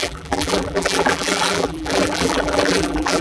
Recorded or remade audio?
remade